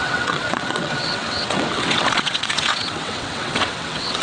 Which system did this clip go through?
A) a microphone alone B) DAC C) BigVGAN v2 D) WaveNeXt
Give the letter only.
D